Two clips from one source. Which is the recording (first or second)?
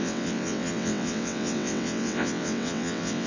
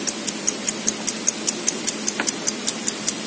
second